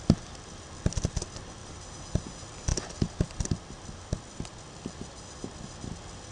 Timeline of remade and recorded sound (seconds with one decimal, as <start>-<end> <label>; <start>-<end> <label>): 0.0-1.6 recorded; 1.6-2.3 remade; 2.3-6.3 recorded